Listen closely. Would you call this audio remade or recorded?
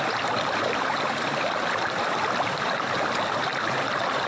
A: recorded